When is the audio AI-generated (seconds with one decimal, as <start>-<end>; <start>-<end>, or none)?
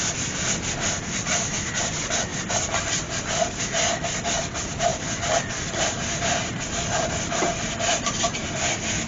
2.3-3.6; 4.9-8.7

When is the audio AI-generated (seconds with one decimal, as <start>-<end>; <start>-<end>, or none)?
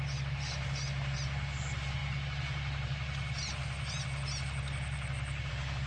none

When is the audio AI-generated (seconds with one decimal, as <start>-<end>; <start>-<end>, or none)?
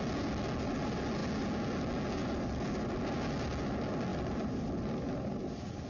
none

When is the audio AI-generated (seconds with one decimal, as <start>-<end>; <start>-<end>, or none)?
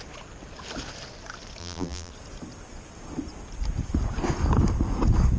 1.6-2.1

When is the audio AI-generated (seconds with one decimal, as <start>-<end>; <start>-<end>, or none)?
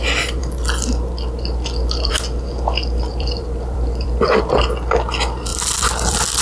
3.1-4.4; 5.5-6.4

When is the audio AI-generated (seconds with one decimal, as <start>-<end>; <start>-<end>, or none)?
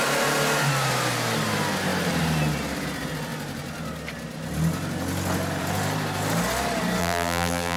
7.0-7.8